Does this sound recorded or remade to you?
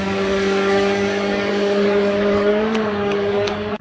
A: remade